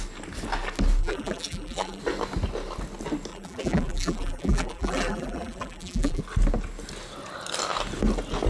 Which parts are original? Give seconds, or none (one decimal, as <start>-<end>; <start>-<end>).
0.0-1.0; 2.0-3.3; 6.2-8.5